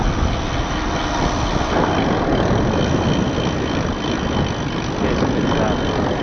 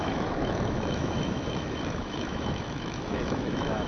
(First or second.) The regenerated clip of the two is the second